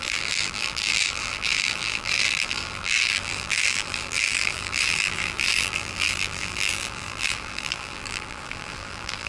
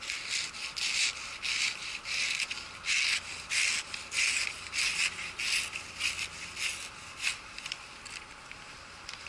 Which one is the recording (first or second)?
second